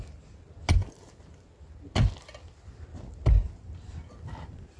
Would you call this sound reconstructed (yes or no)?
no